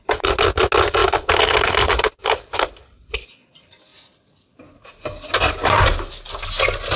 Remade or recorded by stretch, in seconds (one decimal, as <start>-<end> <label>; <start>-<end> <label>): 0.0-7.0 recorded